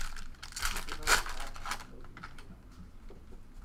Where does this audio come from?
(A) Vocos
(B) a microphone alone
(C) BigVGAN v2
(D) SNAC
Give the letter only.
B